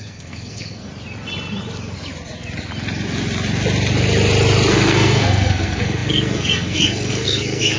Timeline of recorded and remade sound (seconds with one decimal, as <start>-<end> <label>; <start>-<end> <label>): 0.0-0.9 remade; 0.9-4.7 recorded; 4.7-7.8 remade